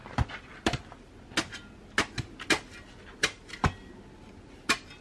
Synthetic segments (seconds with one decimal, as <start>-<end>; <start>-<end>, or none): none